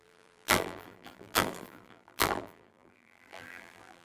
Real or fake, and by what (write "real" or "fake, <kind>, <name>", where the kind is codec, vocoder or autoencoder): fake, vocoder, BigVGAN v2